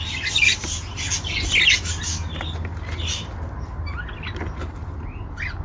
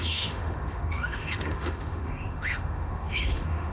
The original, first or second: first